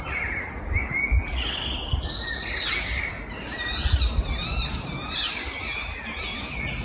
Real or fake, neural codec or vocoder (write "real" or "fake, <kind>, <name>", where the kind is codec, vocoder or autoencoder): real